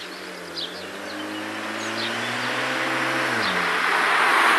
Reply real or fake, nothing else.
real